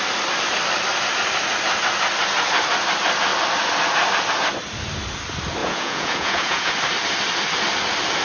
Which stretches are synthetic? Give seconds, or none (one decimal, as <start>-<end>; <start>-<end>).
5.6-6.7